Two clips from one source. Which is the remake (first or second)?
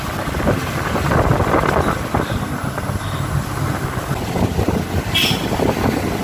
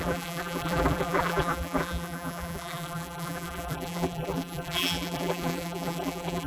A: second